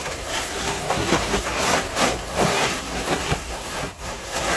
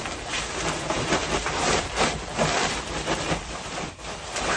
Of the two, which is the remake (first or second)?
first